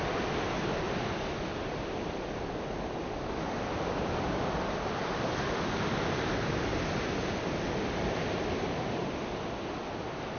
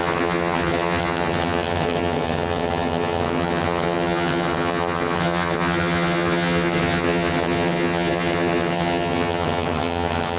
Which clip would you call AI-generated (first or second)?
second